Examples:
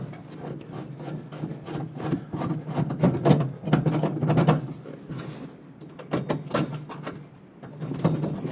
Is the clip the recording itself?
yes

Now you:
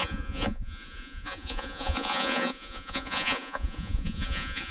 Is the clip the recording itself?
no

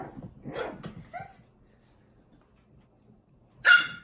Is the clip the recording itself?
yes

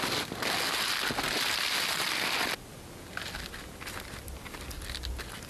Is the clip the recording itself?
yes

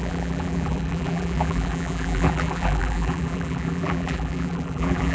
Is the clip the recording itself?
no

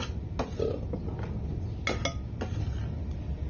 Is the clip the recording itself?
yes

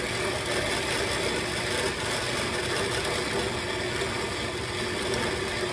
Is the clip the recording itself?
yes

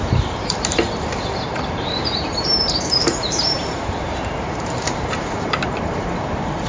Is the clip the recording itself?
no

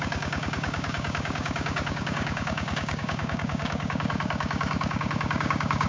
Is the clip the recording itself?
no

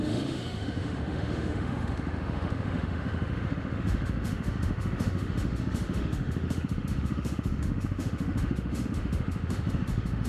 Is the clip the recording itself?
no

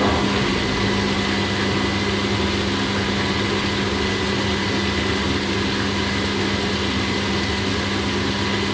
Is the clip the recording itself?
yes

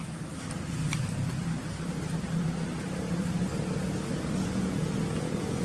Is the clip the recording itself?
no